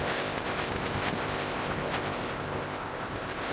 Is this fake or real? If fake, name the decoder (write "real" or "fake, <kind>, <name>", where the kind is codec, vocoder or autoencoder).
fake, codec, ZipCodec